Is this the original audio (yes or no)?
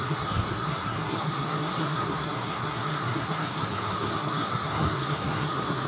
no